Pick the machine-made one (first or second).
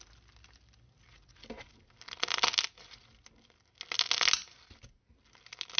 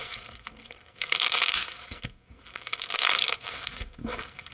second